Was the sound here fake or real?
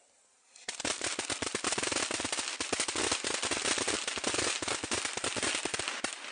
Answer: real